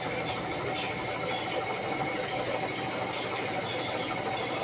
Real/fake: real